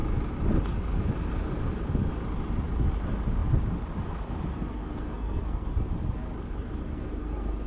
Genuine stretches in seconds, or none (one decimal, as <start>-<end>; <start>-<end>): 0.0-4.5; 5.9-6.8